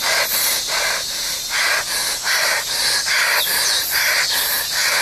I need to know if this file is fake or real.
real